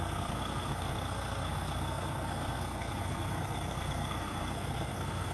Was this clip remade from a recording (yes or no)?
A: yes